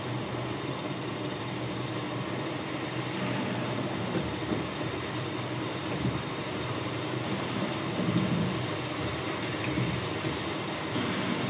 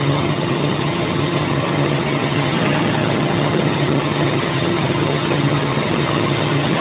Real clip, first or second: first